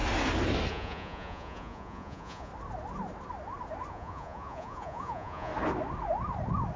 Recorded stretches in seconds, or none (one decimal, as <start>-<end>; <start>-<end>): 0.0-0.7; 2.5-3.9; 5.5-6.8